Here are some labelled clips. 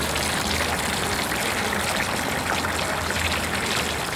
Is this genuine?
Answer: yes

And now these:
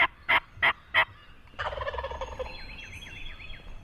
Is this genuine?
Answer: yes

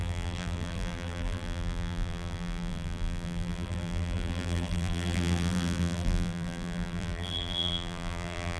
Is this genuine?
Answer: no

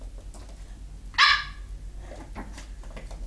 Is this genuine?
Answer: yes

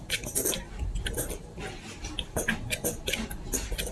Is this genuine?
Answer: yes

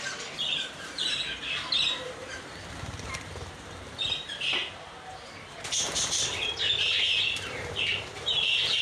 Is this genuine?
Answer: no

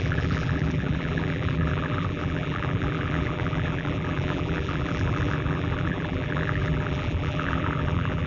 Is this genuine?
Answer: no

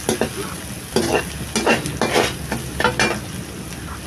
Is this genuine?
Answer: yes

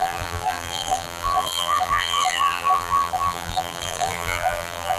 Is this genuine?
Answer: no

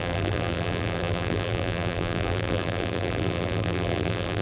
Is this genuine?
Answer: no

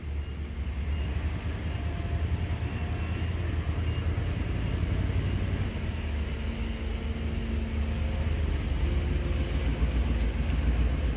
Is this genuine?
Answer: yes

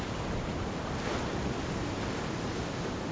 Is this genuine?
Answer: yes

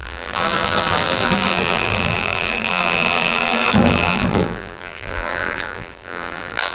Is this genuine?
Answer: no